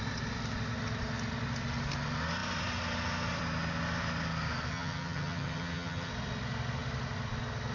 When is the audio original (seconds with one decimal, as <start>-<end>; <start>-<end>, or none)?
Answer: 0.0-4.7; 6.1-7.7